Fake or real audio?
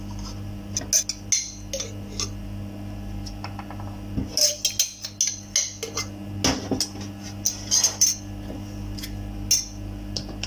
real